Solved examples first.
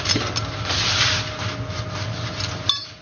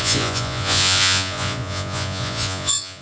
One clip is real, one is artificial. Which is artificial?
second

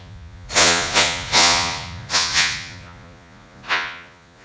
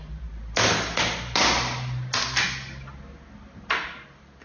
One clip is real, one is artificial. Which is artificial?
first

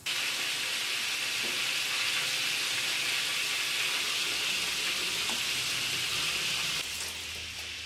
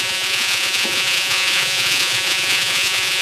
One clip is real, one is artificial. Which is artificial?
second